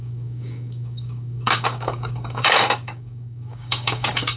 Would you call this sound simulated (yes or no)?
yes